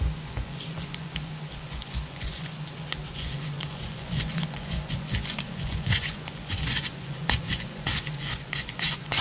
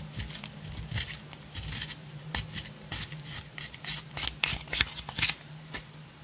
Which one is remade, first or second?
first